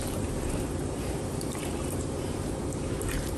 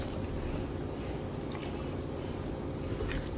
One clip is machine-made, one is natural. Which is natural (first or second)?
second